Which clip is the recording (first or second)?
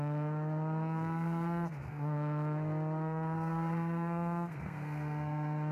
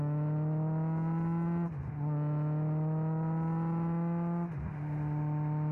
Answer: second